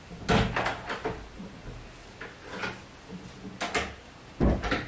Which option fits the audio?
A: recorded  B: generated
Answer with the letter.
A